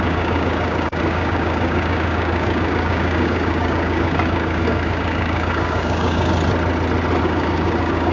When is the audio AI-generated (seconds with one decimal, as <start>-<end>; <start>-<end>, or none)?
0.0-6.3; 7.2-8.1